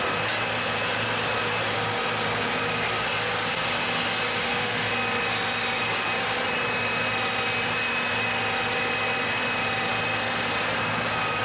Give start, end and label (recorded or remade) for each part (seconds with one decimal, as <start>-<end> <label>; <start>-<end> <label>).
0.0-4.4 recorded; 4.4-4.9 remade; 4.9-11.4 recorded